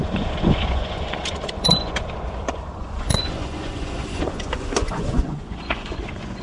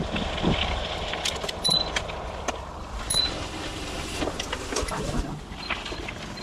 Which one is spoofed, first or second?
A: first